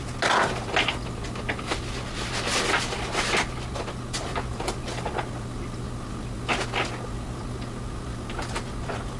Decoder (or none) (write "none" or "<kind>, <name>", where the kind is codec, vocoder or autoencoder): none